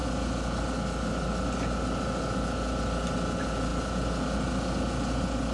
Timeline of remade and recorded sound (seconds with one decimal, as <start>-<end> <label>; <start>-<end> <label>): 0.0-5.5 recorded